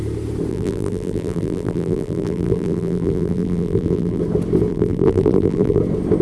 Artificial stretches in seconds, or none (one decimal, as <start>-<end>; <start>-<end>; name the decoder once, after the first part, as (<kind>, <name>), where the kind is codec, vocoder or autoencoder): 0.5-4.2 (vocoder, BigVGAN v2); 4.7-5.8